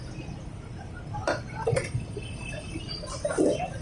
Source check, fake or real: real